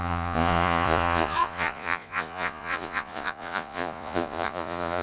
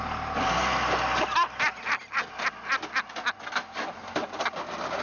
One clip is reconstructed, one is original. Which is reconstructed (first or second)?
first